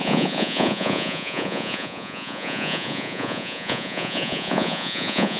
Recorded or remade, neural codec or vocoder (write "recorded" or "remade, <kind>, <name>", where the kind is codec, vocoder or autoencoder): remade, vocoder, Vocos